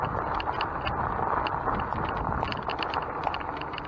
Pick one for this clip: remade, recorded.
recorded